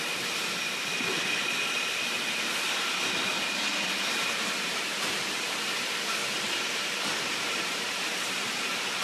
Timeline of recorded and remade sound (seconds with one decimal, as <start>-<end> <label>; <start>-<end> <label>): 0.0-6.2 recorded; 6.2-9.0 remade